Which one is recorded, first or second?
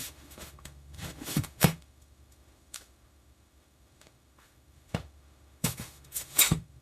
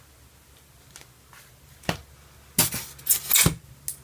second